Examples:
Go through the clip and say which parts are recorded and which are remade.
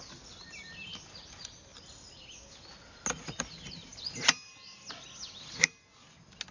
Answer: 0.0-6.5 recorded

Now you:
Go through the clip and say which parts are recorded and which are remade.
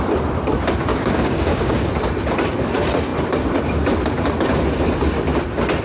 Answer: 0.0-0.9 recorded; 0.9-1.9 remade; 1.9-5.8 recorded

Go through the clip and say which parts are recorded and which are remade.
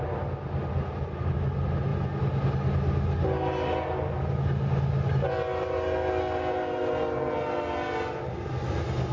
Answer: 0.0-9.1 recorded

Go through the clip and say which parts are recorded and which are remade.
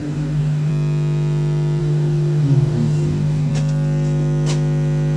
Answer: 0.0-0.7 remade; 0.7-1.8 recorded; 1.8-3.5 remade; 3.5-5.2 recorded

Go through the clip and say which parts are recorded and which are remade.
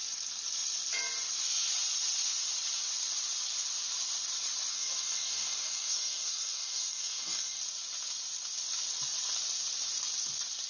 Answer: 0.0-4.7 recorded; 4.7-7.6 remade; 7.6-10.7 recorded